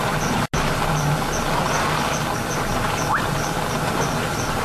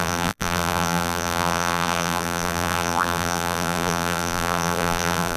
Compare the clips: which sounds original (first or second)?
first